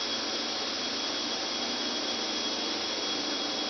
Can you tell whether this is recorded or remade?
recorded